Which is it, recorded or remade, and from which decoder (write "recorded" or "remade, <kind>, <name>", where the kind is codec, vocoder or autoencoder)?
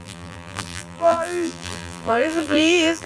remade, vocoder, BigVGAN v2